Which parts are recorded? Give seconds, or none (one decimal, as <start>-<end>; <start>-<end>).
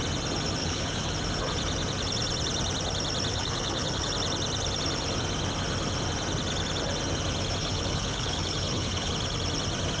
0.0-0.6; 1.1-3.3; 4.1-7.6; 9.1-10.0